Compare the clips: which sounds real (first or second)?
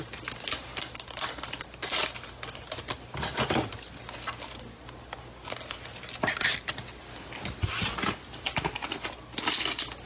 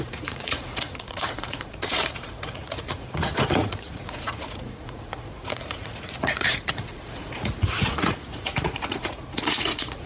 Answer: first